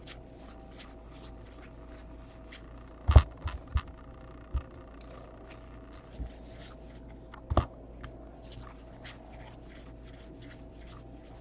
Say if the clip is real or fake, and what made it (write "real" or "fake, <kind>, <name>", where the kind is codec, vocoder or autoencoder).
real